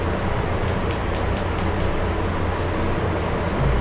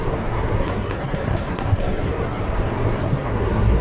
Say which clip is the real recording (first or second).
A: first